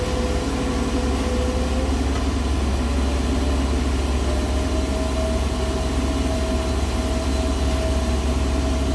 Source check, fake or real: real